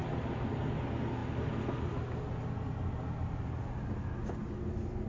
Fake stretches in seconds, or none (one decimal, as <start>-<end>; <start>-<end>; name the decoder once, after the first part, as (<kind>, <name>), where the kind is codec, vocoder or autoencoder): none